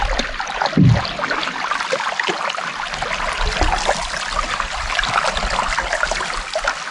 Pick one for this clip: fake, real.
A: real